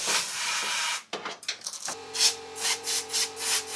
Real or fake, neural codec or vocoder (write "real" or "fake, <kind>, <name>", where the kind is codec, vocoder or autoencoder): fake, vocoder, BigVGAN v2